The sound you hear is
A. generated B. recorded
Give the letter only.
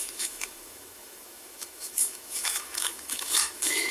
A